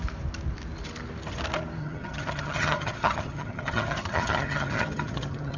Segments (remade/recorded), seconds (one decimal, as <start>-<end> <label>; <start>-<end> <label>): 0.0-1.8 recorded; 1.8-5.6 remade